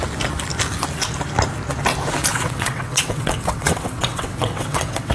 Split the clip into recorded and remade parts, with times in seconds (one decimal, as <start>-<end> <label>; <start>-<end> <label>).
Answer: 0.0-2.3 recorded; 2.3-5.1 remade